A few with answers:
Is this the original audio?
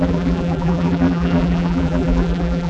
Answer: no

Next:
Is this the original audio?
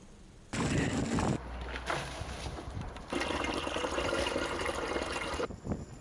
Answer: no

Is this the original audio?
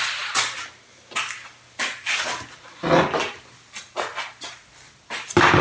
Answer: yes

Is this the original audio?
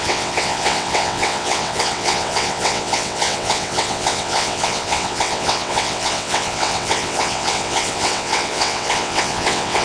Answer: no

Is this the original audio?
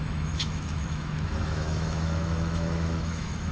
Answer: no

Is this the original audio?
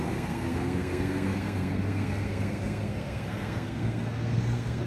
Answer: no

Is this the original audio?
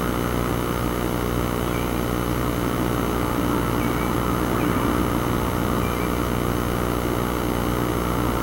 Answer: yes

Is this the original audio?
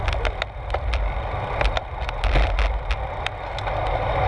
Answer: yes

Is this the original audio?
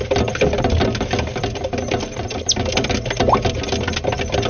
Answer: yes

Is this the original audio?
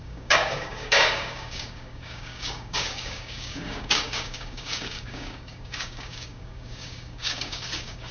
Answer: no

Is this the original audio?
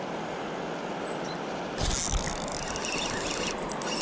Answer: yes